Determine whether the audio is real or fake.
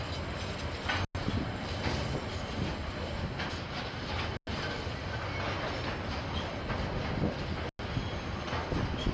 real